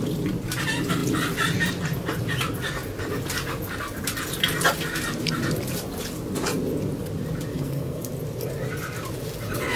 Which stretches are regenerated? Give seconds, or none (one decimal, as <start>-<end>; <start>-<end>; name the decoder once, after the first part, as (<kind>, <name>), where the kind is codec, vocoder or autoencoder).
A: 7.5-8.1 (codec, SNAC)